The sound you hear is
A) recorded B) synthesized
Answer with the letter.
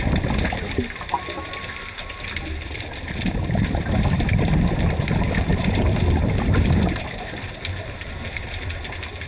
B